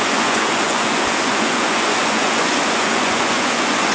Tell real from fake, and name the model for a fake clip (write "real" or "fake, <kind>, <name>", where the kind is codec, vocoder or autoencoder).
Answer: fake, vocoder, Vocos